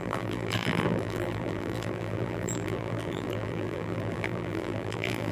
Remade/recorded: remade